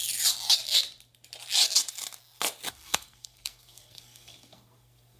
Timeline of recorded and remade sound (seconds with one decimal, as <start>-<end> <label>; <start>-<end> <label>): 0.0-2.7 recorded; 2.7-5.2 remade